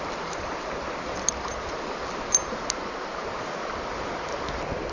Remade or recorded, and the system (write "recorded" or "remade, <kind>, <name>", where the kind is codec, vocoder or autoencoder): recorded